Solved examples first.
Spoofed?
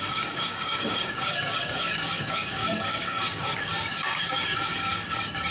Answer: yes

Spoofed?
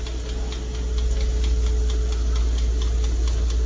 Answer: no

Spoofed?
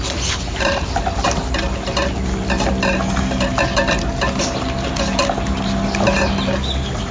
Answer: no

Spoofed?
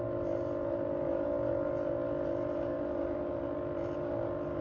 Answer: no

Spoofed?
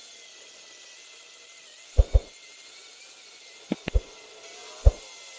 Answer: no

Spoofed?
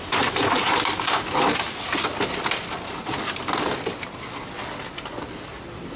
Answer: no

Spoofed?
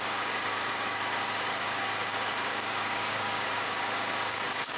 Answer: yes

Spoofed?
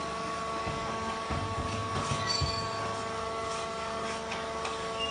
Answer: yes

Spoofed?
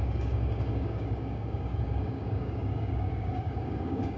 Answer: yes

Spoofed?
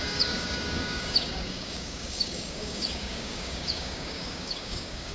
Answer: yes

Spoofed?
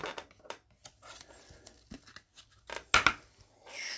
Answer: no